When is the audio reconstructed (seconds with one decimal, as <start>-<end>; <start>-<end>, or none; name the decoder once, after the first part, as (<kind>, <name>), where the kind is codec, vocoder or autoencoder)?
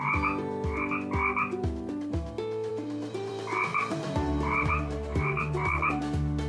2.7-3.3 (vocoder, BigVGAN v2); 3.7-6.0